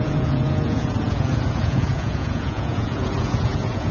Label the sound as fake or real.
fake